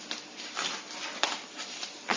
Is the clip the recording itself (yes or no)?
no